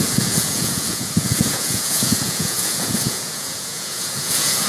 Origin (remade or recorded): remade